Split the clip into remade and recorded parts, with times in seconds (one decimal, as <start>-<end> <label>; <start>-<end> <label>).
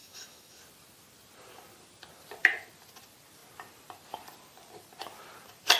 0.0-0.6 remade; 0.6-5.8 recorded